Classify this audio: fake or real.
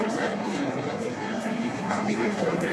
fake